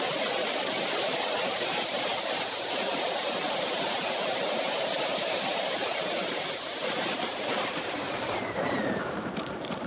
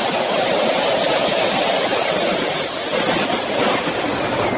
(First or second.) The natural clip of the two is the second